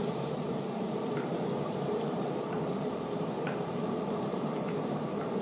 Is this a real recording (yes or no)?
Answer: no